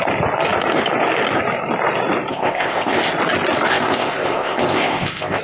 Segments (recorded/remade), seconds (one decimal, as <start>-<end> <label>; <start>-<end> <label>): 0.0-2.3 recorded; 2.3-3.1 remade; 3.1-3.7 recorded; 3.7-5.4 remade